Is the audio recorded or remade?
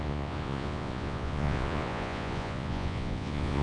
remade